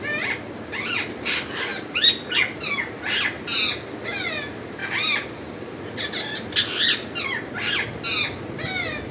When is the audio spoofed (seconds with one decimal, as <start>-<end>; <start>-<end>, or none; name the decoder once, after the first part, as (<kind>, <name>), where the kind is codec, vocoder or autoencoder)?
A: none